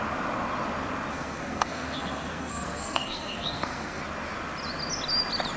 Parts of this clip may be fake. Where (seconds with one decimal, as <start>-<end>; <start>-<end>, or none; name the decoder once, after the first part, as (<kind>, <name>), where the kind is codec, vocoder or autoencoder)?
1.1-4.0 (codec, SNAC)